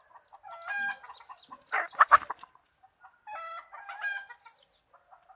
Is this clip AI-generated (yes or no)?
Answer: no